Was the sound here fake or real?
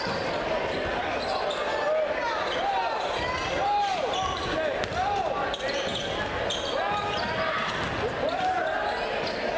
real